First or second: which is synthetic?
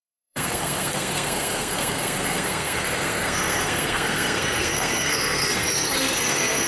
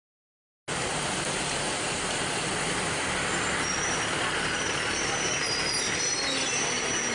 first